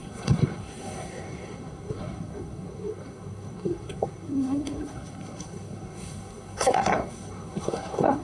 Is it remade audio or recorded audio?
remade